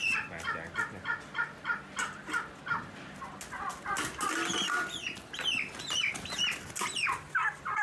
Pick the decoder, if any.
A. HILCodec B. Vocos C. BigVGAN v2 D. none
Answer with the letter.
D